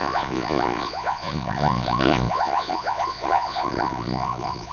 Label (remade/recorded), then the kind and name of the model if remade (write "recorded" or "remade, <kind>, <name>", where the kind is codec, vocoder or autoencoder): remade, vocoder, Vocos